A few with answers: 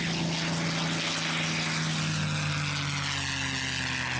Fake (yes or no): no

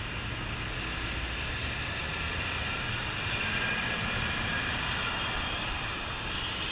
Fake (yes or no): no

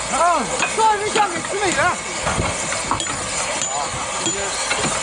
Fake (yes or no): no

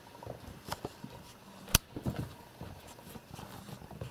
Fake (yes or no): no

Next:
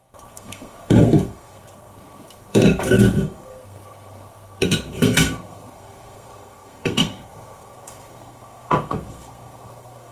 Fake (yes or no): yes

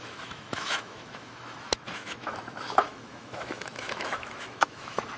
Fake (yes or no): yes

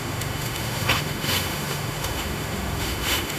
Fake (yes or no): yes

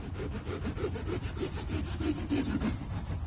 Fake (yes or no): no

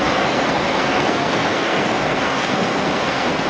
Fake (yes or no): yes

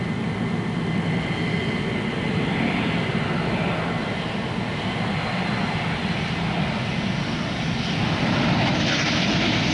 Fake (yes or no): no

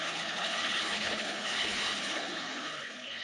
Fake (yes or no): yes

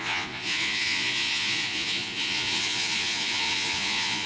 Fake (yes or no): yes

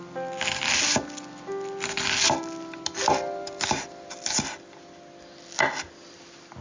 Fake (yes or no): no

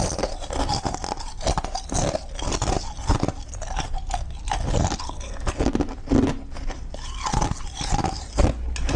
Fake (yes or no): no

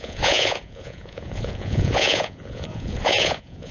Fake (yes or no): yes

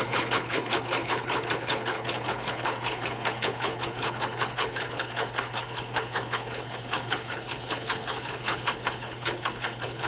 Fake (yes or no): yes